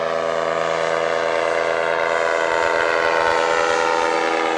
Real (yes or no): yes